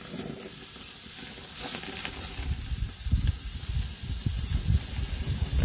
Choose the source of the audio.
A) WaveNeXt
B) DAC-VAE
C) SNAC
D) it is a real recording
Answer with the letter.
D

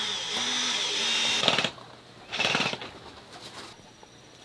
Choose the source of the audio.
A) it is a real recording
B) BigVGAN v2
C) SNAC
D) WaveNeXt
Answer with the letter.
A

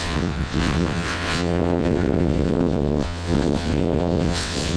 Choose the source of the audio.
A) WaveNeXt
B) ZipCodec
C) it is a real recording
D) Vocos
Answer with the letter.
A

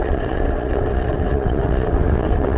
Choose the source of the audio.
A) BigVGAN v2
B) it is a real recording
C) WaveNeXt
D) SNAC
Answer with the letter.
C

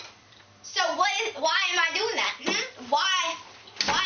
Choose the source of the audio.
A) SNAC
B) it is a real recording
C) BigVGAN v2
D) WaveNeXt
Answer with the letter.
B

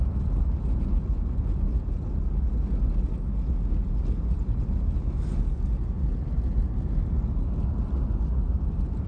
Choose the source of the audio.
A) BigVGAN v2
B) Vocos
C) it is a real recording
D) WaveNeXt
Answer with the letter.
C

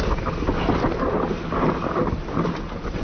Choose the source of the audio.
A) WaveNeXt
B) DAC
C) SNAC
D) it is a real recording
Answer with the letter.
D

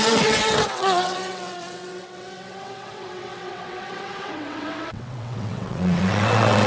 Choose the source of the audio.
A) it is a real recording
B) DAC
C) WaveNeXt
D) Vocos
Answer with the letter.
C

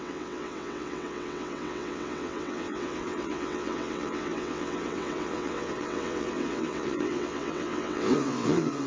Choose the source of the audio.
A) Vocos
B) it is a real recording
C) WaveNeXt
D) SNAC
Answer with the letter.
C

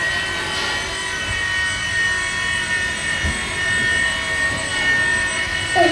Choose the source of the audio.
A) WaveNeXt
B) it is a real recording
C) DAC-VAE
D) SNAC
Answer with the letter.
B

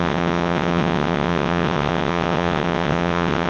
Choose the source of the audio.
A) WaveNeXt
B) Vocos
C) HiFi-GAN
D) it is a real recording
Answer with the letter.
A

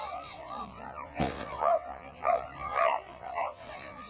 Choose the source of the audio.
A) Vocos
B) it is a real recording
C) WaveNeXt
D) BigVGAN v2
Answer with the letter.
C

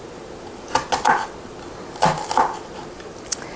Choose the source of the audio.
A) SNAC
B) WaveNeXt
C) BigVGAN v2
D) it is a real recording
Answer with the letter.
D